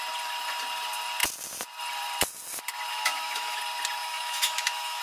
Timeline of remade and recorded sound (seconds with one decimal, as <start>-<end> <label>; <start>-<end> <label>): 0.0-2.9 recorded; 2.9-3.6 remade; 3.6-4.0 recorded; 4.0-5.0 remade